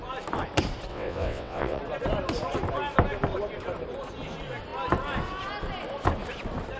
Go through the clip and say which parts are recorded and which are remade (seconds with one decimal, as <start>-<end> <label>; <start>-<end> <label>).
0.0-0.9 recorded; 0.9-1.8 remade; 1.8-6.8 recorded